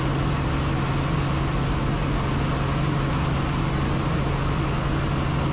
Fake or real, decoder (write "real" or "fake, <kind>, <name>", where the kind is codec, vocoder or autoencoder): real